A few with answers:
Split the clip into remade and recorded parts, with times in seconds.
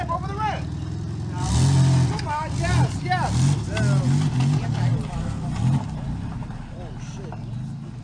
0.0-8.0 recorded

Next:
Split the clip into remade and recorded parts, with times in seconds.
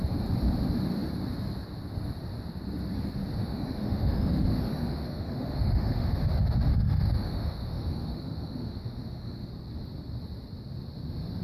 0.0-3.4 recorded; 3.4-6.2 remade; 6.2-6.7 recorded; 6.7-9.5 remade; 9.5-11.4 recorded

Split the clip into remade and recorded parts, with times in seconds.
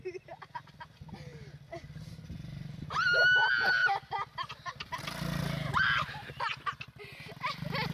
0.0-7.9 recorded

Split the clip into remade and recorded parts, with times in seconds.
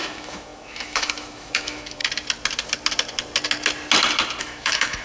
0.0-2.0 remade; 2.0-4.4 recorded; 4.4-5.0 remade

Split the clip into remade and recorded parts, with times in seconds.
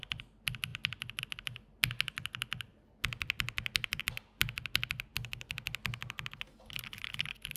0.0-7.6 recorded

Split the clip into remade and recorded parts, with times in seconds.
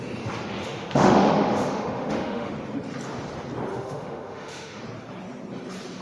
0.0-0.6 recorded; 0.6-2.5 remade; 2.5-3.7 recorded; 3.7-4.8 remade; 4.8-6.0 recorded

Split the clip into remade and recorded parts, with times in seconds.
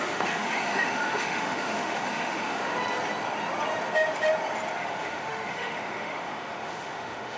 0.0-2.7 remade; 2.7-4.8 recorded; 4.8-7.4 remade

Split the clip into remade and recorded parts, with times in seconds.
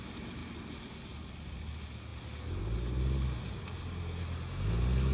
0.0-5.1 recorded